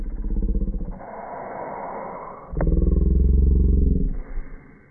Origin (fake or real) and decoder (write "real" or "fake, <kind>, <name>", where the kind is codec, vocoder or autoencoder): real